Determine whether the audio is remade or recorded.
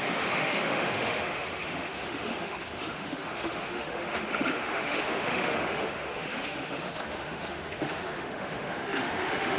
remade